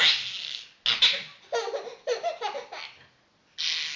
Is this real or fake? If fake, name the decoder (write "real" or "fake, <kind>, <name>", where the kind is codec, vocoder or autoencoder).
real